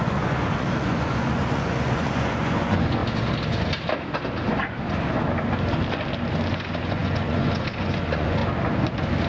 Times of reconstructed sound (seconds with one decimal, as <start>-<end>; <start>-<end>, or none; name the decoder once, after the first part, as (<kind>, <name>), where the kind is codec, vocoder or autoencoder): 0.0-3.0 (vocoder, Vocos); 6.5-8.4